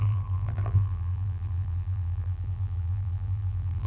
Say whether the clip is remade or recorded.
remade